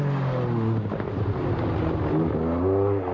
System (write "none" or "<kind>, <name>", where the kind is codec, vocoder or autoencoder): none